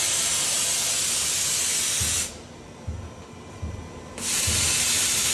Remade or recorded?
recorded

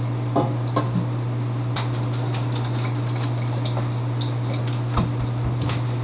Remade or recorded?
recorded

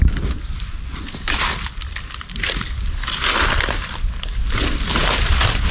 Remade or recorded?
recorded